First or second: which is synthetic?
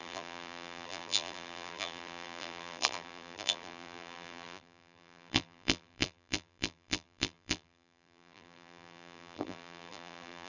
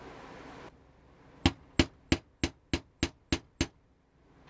first